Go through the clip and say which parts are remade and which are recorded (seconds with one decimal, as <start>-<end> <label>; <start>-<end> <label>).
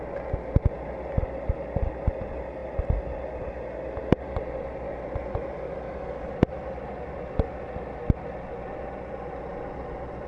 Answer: 0.0-10.3 recorded